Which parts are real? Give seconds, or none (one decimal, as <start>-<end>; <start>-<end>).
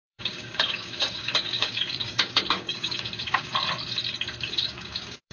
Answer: 3.5-4.4